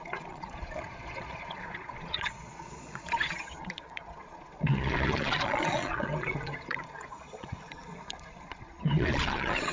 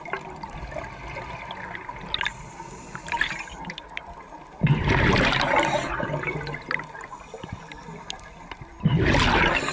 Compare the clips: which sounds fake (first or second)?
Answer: first